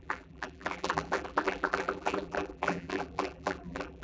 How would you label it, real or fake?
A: fake